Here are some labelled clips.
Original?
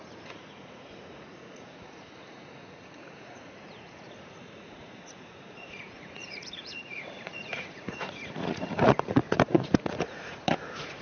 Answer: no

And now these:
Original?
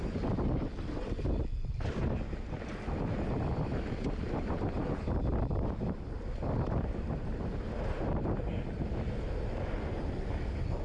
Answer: yes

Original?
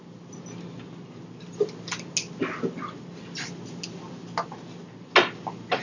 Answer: yes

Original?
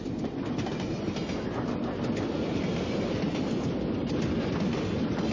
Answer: yes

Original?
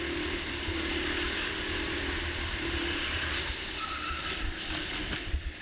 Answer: yes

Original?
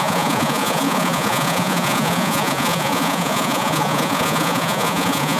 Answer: no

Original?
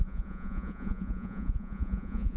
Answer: no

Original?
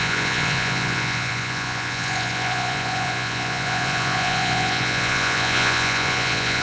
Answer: no